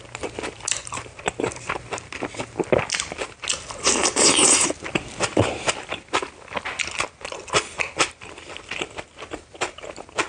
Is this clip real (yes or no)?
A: yes